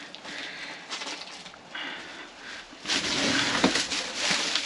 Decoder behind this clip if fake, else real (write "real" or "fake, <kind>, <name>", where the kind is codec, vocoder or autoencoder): real